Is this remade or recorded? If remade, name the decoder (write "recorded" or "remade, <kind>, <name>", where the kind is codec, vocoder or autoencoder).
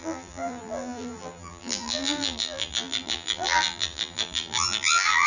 remade, vocoder, BigVGAN v2